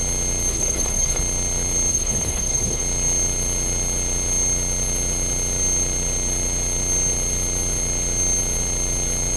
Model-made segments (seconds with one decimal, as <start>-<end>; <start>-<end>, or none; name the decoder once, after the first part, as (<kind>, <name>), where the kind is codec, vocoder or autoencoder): 0.5-1.2 (codec, HILCodec); 1.9-2.8